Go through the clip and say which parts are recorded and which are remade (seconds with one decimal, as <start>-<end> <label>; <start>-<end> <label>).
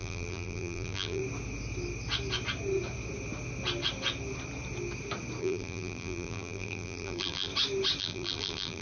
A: 0.0-1.2 remade; 1.2-5.4 recorded; 5.4-7.5 remade; 7.5-8.0 recorded; 8.0-8.8 remade